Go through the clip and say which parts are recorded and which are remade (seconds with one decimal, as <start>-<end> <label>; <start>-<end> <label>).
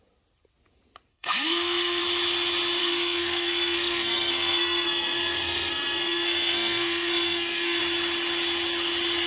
0.0-1.1 recorded; 1.1-2.0 remade; 2.0-2.8 recorded; 2.8-7.8 remade; 7.8-9.3 recorded